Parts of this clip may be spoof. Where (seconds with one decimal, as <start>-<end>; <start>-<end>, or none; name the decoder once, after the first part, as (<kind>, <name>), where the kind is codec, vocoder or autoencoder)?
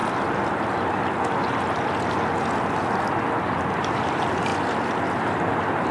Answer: 3.5-4.5 (vocoder, BigVGAN v2); 5.2-5.9